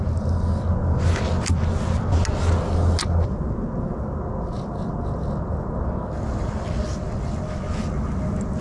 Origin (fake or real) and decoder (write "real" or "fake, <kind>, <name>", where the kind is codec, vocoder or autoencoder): real